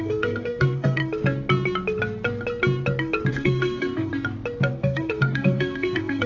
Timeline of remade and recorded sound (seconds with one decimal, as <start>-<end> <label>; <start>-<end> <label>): 0.0-1.0 remade; 1.0-3.3 recorded; 3.3-4.1 remade; 4.1-4.7 recorded; 4.7-6.3 remade